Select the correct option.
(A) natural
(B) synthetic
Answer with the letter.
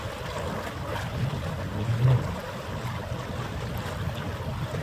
A